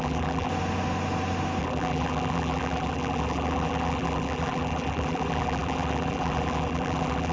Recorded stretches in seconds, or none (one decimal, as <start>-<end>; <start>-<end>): 0.5-1.6